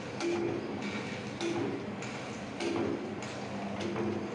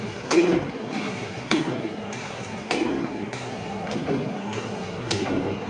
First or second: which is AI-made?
second